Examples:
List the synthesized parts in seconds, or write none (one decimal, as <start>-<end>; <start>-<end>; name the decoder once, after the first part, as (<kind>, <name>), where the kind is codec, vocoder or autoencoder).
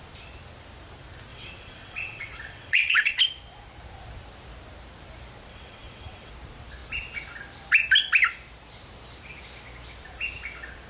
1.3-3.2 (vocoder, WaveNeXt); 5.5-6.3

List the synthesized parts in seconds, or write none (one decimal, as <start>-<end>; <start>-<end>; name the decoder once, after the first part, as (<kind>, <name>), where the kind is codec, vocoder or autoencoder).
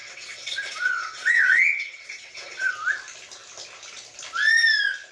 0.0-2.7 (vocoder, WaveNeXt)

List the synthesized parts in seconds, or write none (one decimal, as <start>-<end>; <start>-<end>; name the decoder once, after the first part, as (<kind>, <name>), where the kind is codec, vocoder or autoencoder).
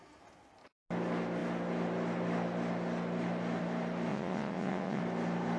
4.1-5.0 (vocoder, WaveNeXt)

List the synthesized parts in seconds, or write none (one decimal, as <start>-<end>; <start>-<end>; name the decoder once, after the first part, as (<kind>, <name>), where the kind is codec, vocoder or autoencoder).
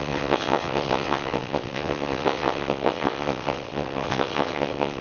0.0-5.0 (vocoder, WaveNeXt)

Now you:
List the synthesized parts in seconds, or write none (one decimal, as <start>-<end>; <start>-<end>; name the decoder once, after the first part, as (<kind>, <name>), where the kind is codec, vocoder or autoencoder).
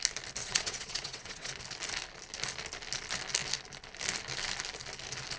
0.4-1.5 (vocoder, WaveNeXt)